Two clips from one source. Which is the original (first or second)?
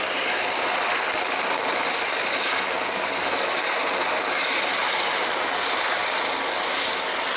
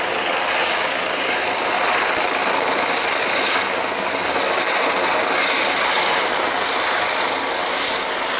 second